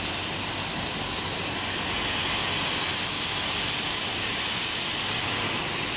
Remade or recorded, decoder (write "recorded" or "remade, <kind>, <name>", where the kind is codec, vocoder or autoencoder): recorded